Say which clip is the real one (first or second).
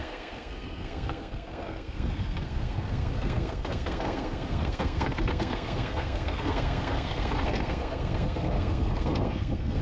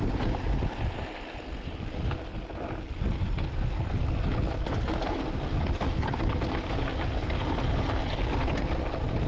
second